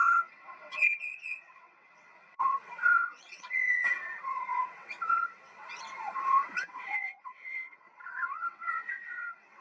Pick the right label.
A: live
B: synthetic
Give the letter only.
B